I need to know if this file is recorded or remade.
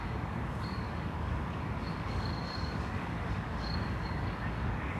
remade